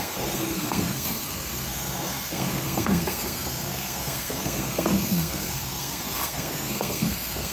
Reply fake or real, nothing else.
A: fake